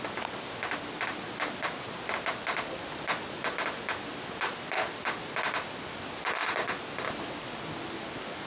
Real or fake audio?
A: real